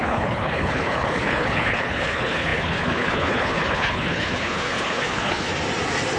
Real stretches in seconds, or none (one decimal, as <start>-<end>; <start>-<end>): 5.5-6.2